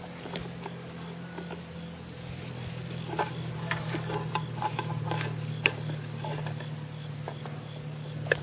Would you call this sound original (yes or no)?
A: yes